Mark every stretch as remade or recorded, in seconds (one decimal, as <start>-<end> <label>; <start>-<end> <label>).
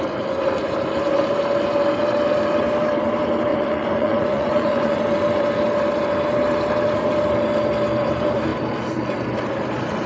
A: 0.0-3.5 recorded; 3.5-5.0 remade; 5.0-10.1 recorded